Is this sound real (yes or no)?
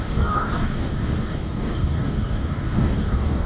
no